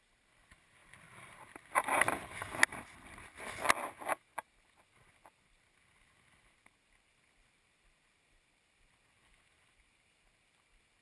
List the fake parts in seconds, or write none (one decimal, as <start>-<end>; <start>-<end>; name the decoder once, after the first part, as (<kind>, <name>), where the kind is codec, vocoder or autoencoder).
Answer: none